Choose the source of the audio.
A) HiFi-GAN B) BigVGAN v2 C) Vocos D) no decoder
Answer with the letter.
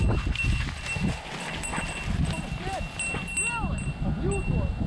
D